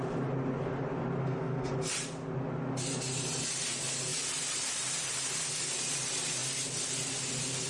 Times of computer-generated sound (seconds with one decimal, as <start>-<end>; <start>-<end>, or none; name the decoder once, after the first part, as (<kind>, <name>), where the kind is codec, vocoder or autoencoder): 1.2-1.7 (codec, SNAC)